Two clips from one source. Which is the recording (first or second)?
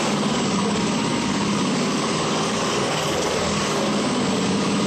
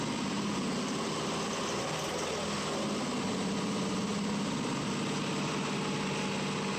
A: second